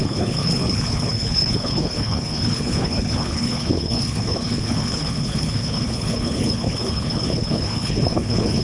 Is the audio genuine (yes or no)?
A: no